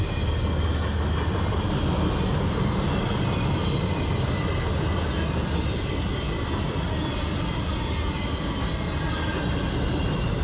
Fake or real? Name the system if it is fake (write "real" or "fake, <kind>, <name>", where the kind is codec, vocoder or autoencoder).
real